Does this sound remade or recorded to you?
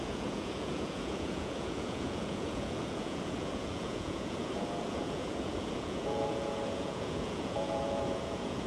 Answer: remade